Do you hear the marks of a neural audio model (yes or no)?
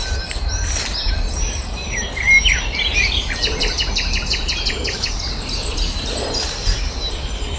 no